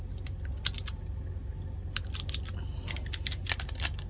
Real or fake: real